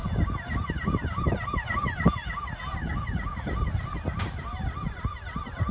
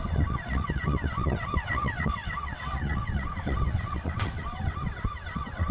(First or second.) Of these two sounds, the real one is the first